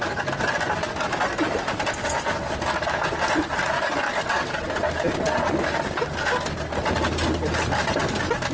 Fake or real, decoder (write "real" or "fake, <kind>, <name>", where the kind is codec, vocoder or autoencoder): real